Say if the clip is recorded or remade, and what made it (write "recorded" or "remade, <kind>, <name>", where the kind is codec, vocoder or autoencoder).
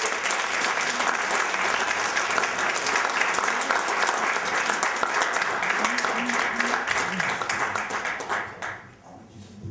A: recorded